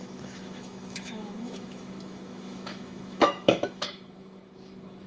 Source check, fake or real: fake